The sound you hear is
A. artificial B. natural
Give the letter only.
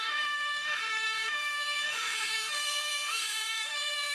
A